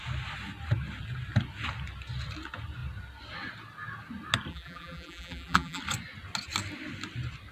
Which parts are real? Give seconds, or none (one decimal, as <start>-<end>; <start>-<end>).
0.0-4.5; 5.8-7.5